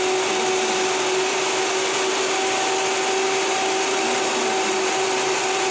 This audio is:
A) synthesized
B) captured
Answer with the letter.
B